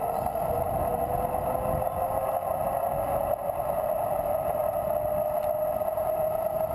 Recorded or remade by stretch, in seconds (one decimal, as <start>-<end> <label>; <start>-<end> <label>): 0.0-6.7 recorded

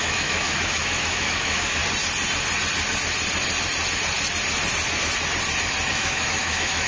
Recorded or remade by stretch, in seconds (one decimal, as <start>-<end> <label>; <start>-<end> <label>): 0.0-1.8 remade; 1.8-5.9 recorded; 5.9-6.9 remade

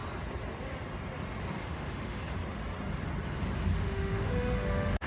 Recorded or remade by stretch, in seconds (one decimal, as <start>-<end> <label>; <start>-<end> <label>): 0.0-1.6 recorded; 1.6-2.2 remade; 2.2-3.7 recorded; 3.7-5.1 remade